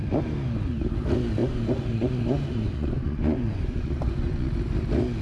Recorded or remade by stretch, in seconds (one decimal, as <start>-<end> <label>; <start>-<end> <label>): 0.0-1.4 recorded; 1.4-4.5 remade; 4.5-5.2 recorded